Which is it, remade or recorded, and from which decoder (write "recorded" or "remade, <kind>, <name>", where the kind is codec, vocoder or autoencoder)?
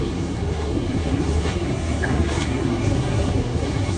remade, codec, SNAC